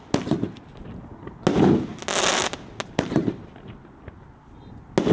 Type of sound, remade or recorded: recorded